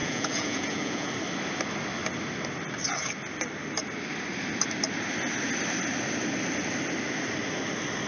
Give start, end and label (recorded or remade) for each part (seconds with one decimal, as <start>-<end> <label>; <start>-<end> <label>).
0.0-1.1 remade; 1.1-8.1 recorded